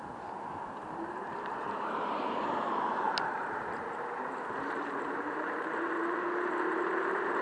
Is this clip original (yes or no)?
no